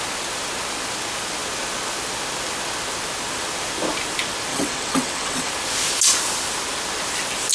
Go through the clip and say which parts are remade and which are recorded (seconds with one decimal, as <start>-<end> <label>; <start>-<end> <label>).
0.0-4.5 recorded; 4.5-5.5 remade; 5.5-7.5 recorded